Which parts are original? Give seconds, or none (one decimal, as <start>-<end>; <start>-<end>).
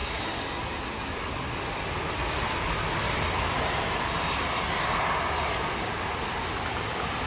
0.0-7.3